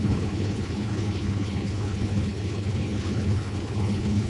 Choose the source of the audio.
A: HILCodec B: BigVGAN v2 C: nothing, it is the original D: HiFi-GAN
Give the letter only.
A